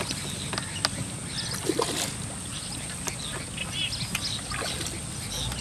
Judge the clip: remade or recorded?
recorded